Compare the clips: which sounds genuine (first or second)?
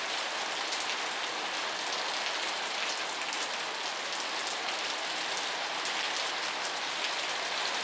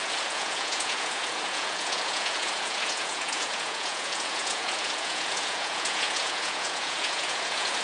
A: first